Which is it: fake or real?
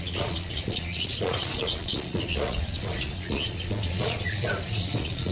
fake